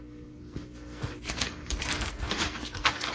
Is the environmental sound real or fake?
fake